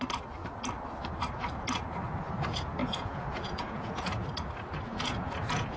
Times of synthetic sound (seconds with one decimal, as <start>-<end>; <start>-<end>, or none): 2.8-4.1; 4.9-5.8

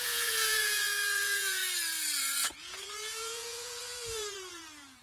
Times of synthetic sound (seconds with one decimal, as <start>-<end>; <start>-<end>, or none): 0.0-1.6; 2.2-5.0

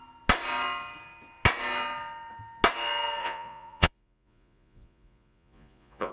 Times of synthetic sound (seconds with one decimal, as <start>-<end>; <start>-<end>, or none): 3.2-6.1

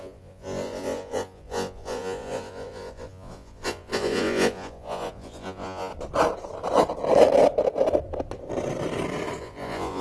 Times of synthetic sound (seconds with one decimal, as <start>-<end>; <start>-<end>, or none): 0.0-5.9; 9.4-10.0

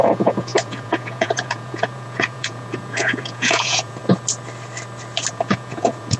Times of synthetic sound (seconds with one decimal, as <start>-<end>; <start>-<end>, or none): 0.0-4.0; 5.3-6.2

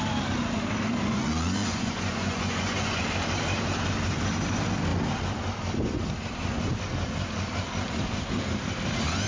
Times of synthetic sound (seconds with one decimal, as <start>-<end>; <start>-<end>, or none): 1.1-3.0

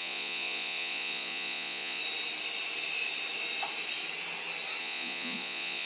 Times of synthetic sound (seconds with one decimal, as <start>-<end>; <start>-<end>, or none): 0.0-2.0; 4.8-5.9

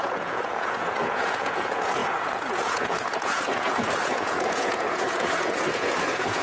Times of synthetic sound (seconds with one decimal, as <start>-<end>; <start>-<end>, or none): 0.0-6.4